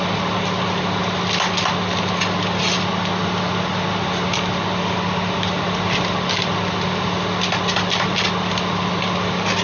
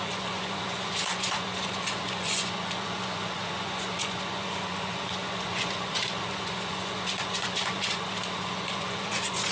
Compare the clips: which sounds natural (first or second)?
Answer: first